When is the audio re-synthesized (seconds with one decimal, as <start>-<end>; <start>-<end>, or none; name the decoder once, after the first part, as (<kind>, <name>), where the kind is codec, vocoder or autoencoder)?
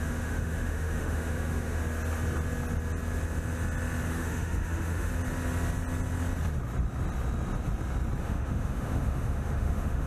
0.0-1.8 (autoencoder, DAC-VAE); 4.1-5.1; 8.2-10.1